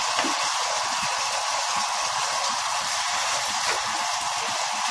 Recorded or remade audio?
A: recorded